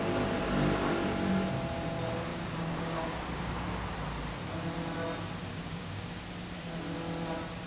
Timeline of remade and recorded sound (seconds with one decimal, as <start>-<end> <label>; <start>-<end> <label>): 0.0-2.3 recorded; 2.3-3.5 remade; 3.5-5.5 recorded; 5.5-6.1 remade; 6.1-7.7 recorded

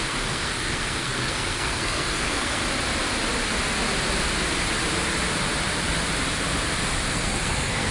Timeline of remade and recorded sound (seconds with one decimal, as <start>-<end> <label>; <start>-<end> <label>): 0.0-2.6 remade; 2.6-7.1 recorded; 7.1-7.9 remade

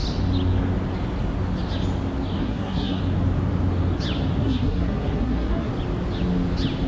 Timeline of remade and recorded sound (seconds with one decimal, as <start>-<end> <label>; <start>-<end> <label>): 0.0-2.4 recorded; 2.4-3.0 remade; 3.0-4.4 recorded; 4.4-5.7 remade; 5.7-6.9 recorded